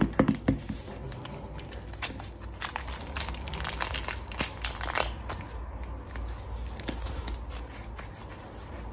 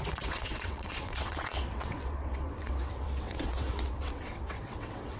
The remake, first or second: second